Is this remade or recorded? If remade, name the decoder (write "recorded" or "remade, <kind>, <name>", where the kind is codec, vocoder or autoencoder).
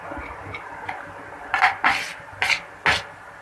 recorded